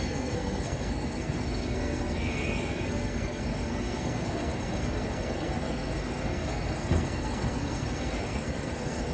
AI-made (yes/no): yes